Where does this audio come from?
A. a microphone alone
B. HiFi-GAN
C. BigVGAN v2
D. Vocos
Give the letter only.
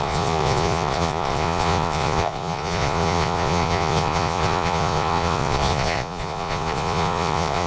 D